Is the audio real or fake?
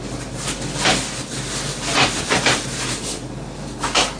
real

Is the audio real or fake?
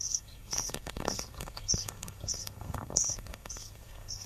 fake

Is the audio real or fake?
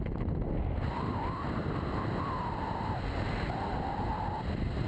real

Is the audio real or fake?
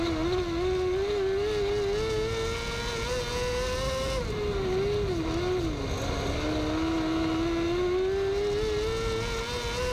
real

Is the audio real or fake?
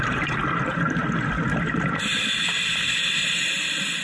real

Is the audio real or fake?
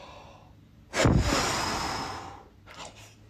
real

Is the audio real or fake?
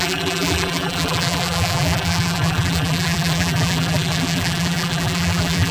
fake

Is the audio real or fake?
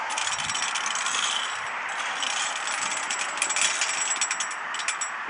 real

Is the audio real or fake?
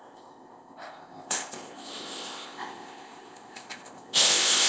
fake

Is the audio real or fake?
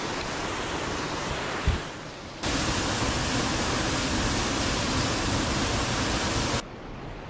real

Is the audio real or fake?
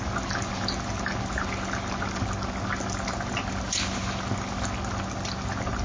real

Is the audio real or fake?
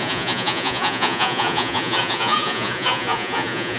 fake